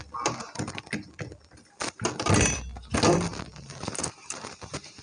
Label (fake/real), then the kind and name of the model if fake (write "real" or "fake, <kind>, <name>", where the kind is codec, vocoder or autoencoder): real